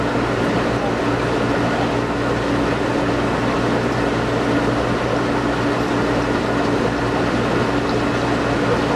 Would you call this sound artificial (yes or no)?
no